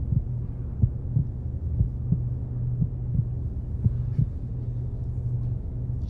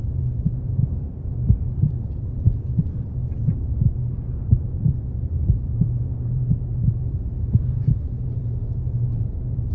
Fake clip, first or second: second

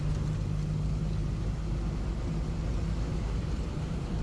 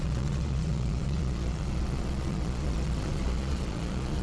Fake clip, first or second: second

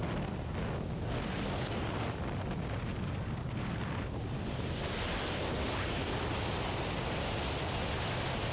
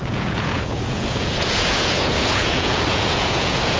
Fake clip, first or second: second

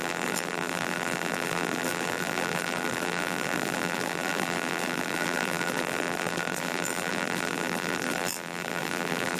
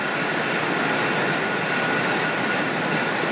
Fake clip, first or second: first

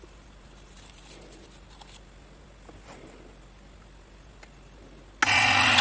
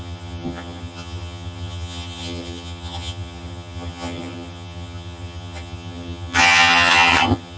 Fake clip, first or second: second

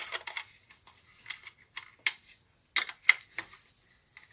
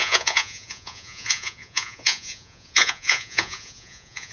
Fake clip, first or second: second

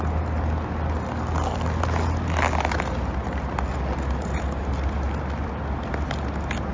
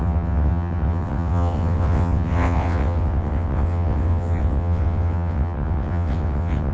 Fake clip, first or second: second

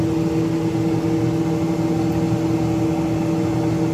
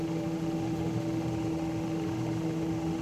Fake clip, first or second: second